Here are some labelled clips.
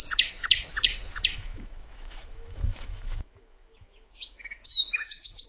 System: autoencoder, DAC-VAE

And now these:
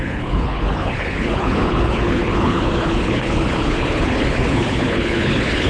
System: codec, HILCodec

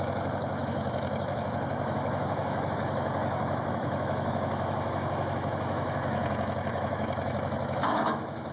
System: autoencoder, DAC-VAE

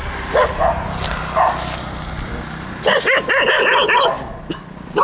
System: none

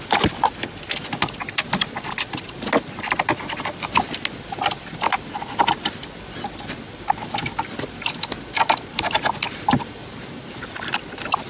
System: none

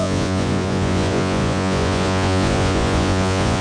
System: vocoder, Vocos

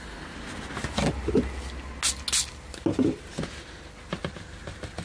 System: none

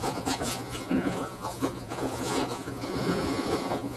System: vocoder, Vocos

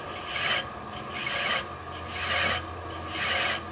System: none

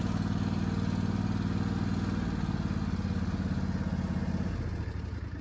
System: none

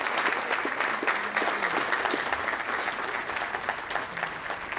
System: none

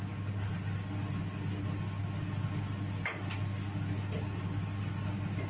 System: none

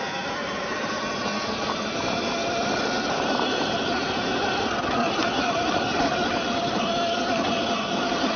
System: none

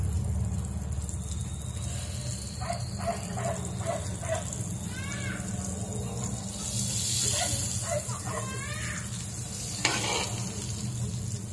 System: none